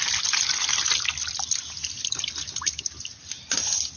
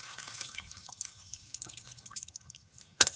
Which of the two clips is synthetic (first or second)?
second